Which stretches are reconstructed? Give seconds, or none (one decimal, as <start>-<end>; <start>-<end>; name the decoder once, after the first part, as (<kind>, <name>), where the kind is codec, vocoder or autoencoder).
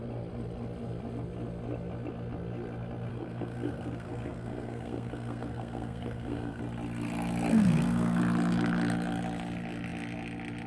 3.1-6.6 (codec, SNAC); 7.5-8.2